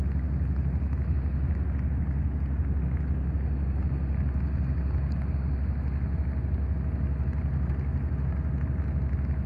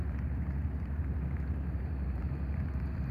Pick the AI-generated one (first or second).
second